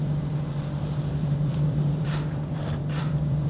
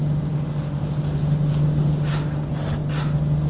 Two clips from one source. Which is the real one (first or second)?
second